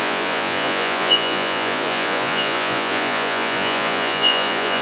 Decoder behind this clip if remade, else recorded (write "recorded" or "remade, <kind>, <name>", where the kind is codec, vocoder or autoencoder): remade, vocoder, Vocos